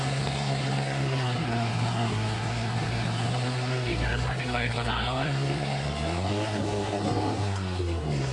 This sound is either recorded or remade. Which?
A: remade